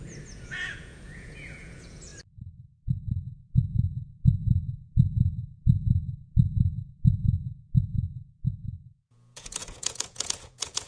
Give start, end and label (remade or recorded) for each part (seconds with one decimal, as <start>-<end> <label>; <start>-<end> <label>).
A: 0.0-2.1 remade; 2.1-3.2 recorded; 3.2-10.9 remade